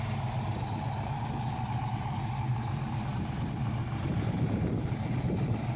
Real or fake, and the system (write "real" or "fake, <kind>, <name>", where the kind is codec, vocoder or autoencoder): fake, vocoder, BigVGAN v2